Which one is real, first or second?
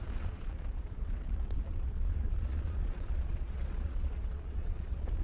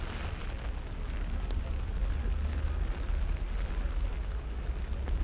second